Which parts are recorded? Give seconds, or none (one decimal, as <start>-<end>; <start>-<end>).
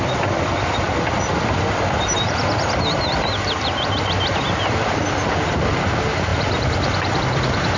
none